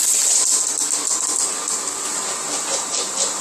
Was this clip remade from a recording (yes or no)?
no